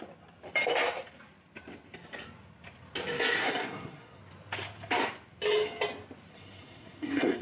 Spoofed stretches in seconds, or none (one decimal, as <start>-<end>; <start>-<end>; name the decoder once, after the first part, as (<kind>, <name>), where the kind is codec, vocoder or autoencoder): 3.4-4.2 (codec, SNAC); 6.3-7.4